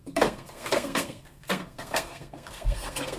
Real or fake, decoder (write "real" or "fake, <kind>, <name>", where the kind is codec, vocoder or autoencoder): fake, codec, SNAC